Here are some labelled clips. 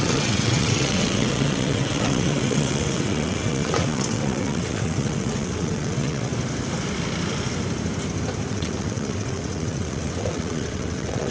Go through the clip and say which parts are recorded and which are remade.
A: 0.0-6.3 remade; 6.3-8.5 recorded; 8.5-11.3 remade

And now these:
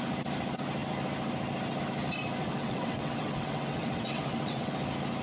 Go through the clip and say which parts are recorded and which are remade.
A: 0.0-2.4 recorded; 2.4-4.7 remade; 4.7-5.2 recorded

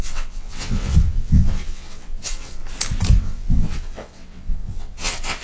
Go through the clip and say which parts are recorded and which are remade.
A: 0.0-2.6 remade; 2.6-3.2 recorded; 3.2-5.4 remade